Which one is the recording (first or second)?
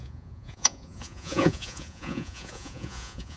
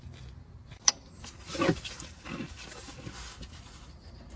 second